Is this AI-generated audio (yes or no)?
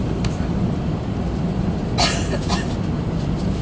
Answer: no